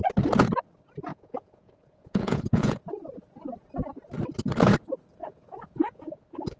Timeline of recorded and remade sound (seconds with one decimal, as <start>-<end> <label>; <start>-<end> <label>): 0.0-1.1 recorded; 1.1-2.8 remade; 2.8-5.2 recorded; 5.2-6.6 remade